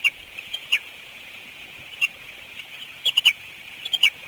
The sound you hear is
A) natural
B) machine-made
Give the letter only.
B